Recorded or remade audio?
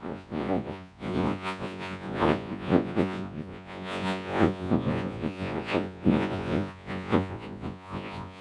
remade